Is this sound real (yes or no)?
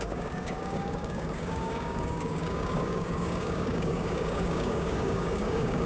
no